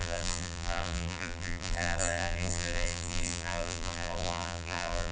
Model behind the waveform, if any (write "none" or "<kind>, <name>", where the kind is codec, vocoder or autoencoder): vocoder, BigVGAN v2